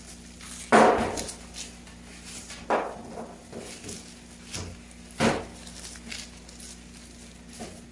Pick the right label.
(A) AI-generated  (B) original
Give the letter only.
B